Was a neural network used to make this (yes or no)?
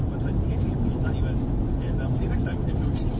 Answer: no